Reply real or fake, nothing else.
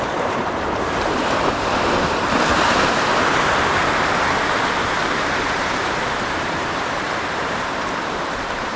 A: fake